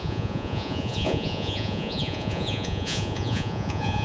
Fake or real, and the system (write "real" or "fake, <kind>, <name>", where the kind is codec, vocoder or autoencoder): fake, vocoder, Vocos